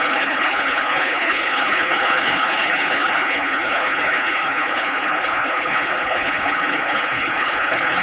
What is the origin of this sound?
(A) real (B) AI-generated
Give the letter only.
B